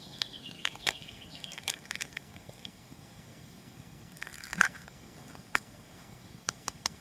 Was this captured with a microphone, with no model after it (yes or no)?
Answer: no